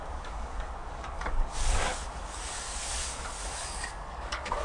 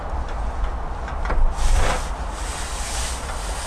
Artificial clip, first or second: first